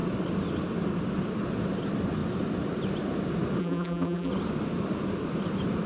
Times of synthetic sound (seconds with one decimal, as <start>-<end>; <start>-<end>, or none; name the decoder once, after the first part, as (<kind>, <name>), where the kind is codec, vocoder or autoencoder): 3.6-4.3 (vocoder, BigVGAN v2)